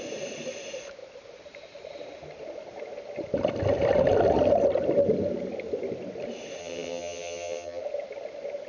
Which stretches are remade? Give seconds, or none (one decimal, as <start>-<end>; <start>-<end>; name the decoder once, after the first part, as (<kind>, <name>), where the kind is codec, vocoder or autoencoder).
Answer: 6.6-7.8 (vocoder, HiFi-GAN)